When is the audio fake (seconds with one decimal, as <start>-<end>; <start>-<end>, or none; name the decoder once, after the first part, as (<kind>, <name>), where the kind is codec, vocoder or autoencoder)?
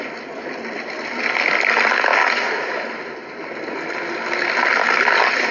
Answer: none